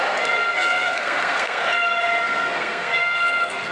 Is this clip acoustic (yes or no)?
no